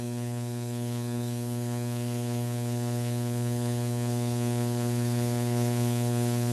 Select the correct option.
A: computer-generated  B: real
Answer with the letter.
A